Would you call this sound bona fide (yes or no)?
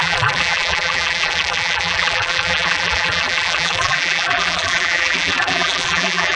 no